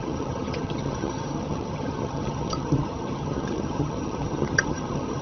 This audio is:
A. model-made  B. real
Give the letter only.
A